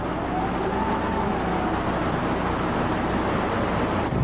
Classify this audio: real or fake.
real